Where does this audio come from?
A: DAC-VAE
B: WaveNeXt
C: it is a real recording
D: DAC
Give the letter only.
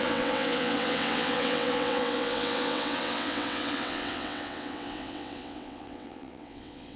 B